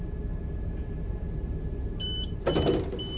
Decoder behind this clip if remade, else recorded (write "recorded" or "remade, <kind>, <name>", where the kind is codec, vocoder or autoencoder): recorded